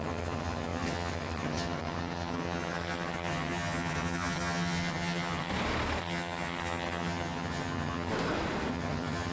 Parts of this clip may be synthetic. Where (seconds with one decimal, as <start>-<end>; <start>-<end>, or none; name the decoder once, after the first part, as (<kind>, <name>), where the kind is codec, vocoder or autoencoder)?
0.0-5.5 (vocoder, HiFi-GAN); 6.0-8.1; 8.7-9.3